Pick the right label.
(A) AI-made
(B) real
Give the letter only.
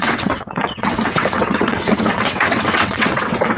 A